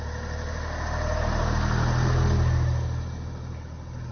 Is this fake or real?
real